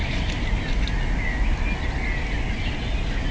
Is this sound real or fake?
real